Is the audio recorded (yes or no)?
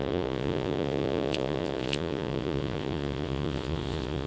no